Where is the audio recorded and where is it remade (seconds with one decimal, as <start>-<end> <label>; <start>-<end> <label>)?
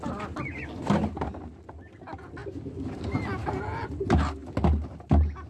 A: 0.0-5.5 recorded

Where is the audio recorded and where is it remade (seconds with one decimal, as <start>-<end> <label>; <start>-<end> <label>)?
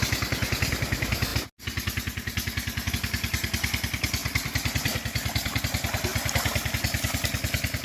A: 0.0-4.2 recorded; 4.2-5.6 remade; 5.6-7.8 recorded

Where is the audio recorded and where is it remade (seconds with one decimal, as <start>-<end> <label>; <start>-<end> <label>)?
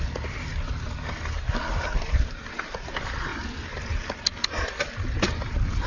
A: 0.0-3.3 remade; 3.3-5.9 recorded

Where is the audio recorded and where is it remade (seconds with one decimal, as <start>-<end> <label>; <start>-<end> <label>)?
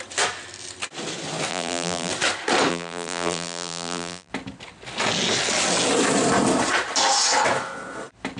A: 0.0-1.5 recorded; 1.5-2.1 remade; 2.1-2.7 recorded; 2.7-4.3 remade; 4.3-8.4 recorded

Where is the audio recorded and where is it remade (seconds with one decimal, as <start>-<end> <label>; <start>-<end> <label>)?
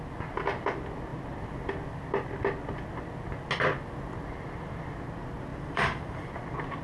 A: 0.0-5.5 recorded; 5.5-6.3 remade; 6.3-6.8 recorded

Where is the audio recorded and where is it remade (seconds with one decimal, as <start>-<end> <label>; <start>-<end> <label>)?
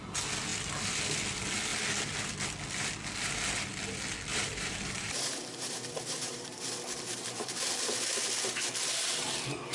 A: 0.0-4.3 recorded; 4.3-7.6 remade; 7.6-9.7 recorded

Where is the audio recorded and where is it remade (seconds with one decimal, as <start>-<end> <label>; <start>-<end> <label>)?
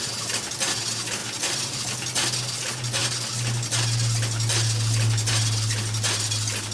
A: 0.0-1.2 recorded; 1.2-1.9 remade; 1.9-6.7 recorded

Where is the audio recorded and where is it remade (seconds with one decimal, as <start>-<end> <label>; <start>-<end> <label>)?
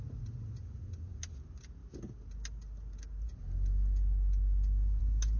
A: 0.0-5.4 recorded